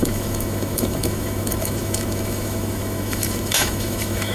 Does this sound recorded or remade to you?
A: remade